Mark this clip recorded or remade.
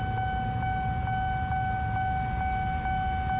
recorded